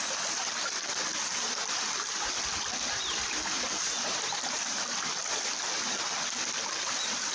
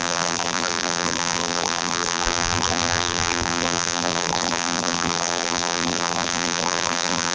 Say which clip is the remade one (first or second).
second